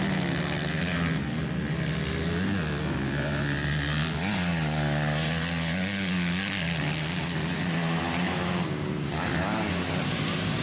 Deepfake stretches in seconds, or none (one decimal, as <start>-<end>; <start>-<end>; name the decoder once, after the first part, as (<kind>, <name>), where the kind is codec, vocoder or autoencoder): none

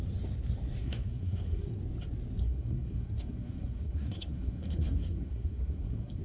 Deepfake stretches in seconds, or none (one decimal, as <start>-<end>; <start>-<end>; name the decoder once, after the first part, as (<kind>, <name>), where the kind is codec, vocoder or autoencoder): 0.8-1.8 (codec, SNAC); 2.4-6.2

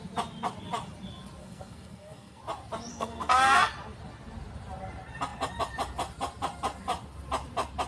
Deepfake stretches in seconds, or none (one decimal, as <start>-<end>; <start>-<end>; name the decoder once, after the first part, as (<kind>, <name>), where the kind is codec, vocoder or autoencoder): 1.4-2.4 (codec, SNAC); 2.9-3.7

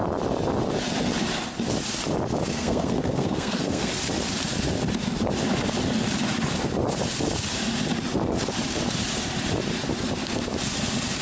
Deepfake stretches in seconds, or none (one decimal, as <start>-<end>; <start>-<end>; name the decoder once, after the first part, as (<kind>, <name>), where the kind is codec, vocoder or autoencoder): 2.5-3.9 (codec, SNAC)

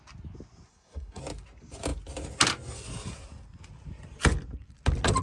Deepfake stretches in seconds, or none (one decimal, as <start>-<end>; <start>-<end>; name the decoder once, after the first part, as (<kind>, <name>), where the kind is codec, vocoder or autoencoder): 0.7-1.2 (codec, SNAC)